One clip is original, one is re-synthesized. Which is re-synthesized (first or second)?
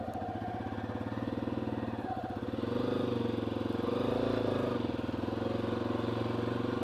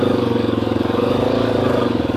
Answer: second